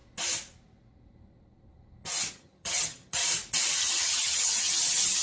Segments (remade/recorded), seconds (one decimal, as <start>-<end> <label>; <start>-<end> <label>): 0.0-2.3 recorded; 2.3-3.2 remade; 3.2-3.8 recorded; 3.8-5.2 remade